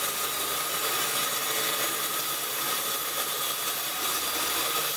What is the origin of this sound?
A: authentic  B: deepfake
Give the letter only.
A